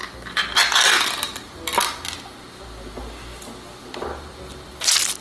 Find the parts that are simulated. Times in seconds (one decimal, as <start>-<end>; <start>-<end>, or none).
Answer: none